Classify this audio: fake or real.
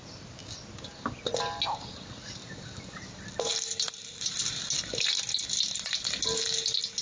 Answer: real